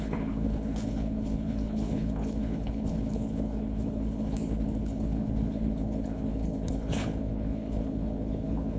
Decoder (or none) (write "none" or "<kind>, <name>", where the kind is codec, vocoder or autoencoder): codec, HILCodec